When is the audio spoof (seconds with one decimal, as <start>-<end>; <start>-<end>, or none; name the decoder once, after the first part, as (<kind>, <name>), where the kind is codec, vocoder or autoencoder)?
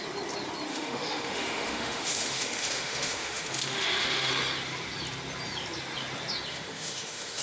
0.7-4.3 (autoencoder, DAC-VAE); 6.5-7.4